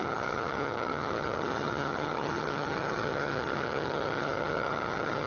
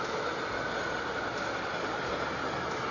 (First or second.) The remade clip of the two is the first